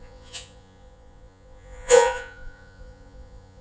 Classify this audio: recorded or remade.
remade